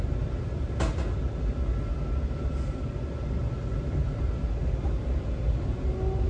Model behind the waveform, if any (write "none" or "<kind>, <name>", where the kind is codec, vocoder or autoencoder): none